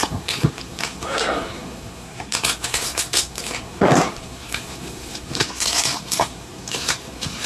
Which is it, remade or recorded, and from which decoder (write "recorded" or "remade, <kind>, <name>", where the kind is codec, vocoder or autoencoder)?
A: remade, codec, SNAC